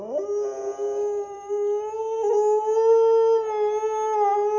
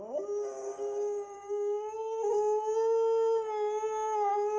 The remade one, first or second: second